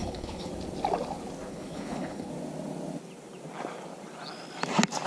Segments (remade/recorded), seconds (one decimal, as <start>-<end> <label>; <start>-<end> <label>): 0.0-0.5 remade; 0.5-1.5 recorded; 1.5-2.3 remade; 2.3-5.1 recorded